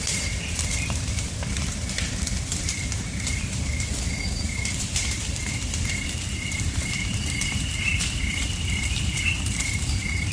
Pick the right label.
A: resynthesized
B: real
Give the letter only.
A